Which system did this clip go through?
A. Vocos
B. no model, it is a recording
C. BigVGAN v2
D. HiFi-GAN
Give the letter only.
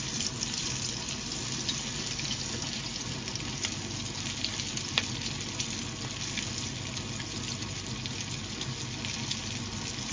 B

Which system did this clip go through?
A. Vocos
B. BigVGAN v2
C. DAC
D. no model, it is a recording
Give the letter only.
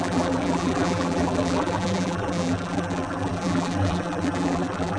B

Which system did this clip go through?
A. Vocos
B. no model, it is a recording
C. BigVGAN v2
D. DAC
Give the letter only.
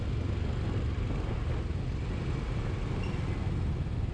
B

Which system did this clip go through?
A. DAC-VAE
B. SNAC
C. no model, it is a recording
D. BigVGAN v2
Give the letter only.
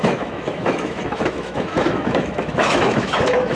A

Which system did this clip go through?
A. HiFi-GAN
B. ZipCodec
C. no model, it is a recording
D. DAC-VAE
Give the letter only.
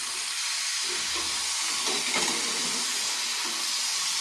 C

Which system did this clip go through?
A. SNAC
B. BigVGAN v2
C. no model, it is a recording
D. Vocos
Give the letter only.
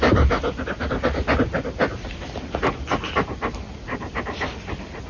C